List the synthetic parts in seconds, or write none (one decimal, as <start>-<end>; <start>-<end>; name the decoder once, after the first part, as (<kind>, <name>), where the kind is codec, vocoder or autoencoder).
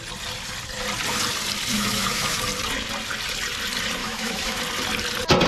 1.7-2.4 (autoencoder, DAC-VAE); 4.0-4.6